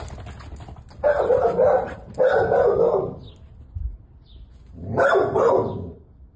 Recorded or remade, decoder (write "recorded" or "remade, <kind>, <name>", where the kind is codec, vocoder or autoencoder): recorded